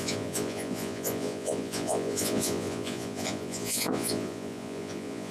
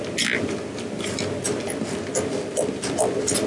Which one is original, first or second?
second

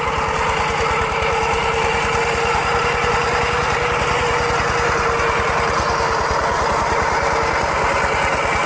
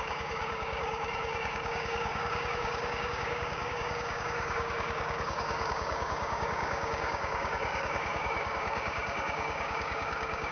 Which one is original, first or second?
first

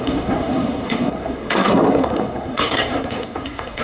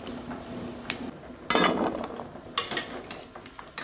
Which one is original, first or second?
second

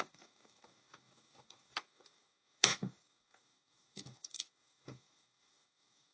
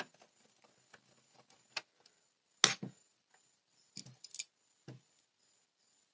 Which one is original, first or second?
second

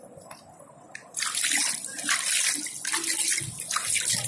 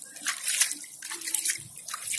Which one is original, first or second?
first